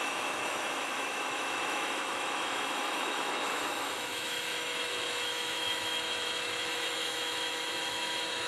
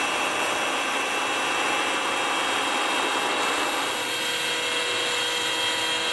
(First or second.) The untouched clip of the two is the second